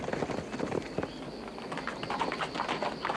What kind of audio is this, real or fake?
real